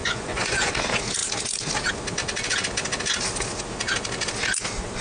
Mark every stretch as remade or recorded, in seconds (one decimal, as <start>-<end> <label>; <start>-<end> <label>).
0.0-0.7 remade; 0.7-5.0 recorded